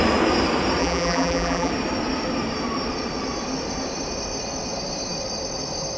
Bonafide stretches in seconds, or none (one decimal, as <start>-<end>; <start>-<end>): 0.0-0.8; 1.7-6.0